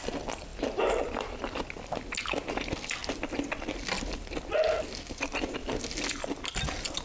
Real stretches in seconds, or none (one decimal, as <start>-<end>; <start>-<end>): 0.0-0.5; 2.0-7.0